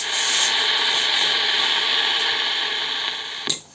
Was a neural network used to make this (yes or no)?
no